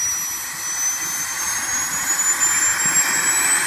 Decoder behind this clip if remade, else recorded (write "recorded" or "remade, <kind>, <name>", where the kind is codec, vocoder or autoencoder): recorded